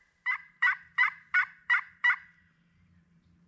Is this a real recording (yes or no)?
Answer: no